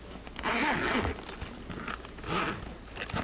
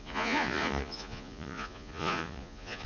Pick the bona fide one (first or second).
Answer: first